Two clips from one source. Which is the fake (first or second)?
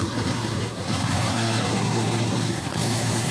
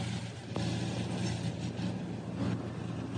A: first